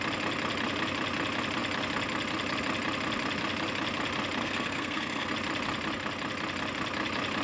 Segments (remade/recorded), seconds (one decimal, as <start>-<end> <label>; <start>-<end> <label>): 0.0-4.4 recorded; 4.4-5.3 remade; 5.3-7.4 recorded